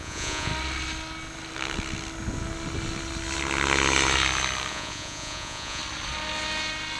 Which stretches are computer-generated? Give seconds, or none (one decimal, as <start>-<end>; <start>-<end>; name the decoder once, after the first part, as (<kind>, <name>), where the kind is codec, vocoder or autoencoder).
0.0-0.5 (vocoder, Vocos); 4.7-5.8